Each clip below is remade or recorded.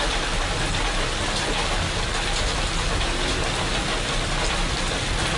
recorded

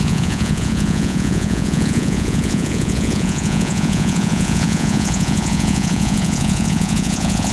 remade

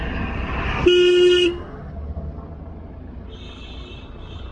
recorded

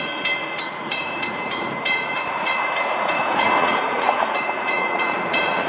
remade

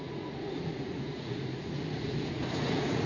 remade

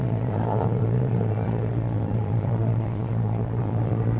remade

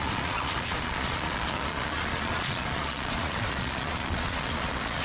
remade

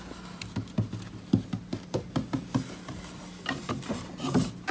recorded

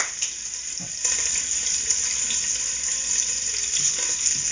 recorded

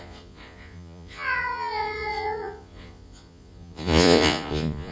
remade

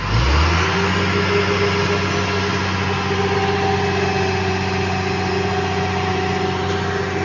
recorded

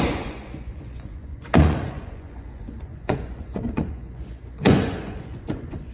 remade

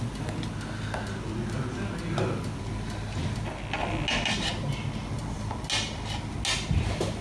recorded